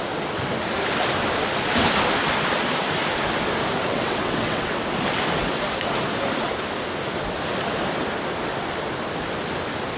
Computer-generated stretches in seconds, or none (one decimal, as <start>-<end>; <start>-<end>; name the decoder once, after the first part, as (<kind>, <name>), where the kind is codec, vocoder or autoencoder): 3.8-4.8 (vocoder, WaveNeXt)